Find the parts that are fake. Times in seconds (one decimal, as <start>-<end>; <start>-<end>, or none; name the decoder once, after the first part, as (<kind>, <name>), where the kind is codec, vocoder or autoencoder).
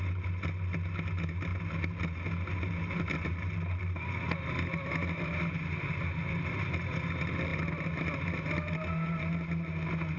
none